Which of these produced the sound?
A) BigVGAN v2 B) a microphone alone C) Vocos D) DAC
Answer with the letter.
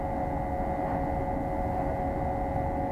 B